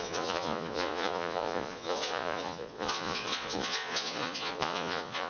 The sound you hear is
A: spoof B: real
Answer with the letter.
A